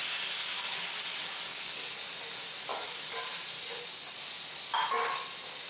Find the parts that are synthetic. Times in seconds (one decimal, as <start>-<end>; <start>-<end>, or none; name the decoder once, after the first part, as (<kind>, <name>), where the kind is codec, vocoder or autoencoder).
0.4-1.9 (codec, DAC); 2.7-3.5